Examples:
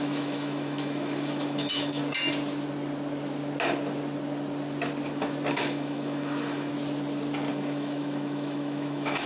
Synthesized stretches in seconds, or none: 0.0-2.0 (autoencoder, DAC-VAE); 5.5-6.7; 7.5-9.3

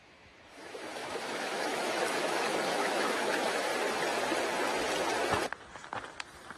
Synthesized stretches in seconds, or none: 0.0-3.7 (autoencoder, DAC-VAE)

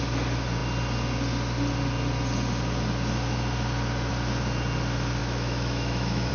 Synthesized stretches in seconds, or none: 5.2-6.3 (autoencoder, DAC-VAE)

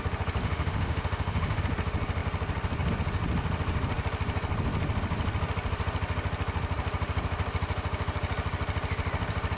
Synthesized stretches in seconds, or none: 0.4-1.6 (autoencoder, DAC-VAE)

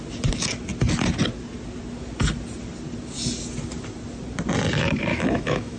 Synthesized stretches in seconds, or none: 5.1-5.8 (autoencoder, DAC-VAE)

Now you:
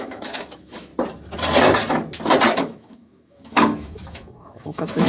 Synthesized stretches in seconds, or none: 0.0-0.9 (autoencoder, DAC-VAE); 2.6-5.1